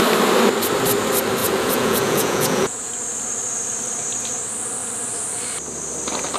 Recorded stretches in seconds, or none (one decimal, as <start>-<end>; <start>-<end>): 0.0-1.4; 2.9-6.4